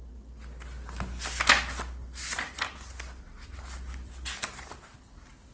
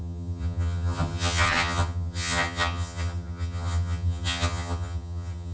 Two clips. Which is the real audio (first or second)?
first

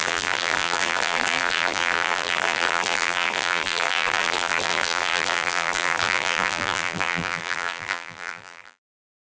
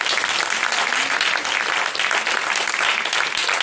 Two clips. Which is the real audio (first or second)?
second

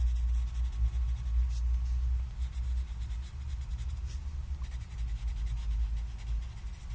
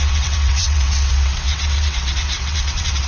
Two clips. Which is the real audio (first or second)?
first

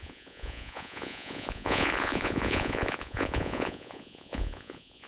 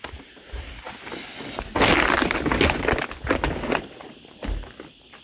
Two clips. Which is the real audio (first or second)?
second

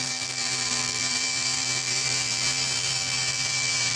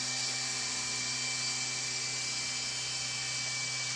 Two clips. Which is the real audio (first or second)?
second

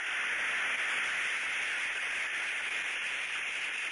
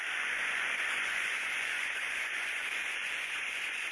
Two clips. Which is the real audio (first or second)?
first